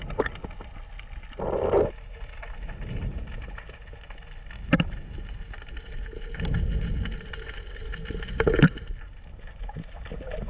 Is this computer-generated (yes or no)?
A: no